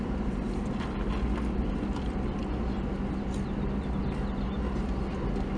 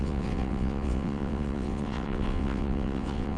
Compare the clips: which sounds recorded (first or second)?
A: first